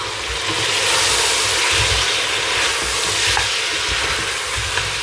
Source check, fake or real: real